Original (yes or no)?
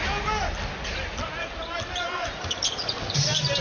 yes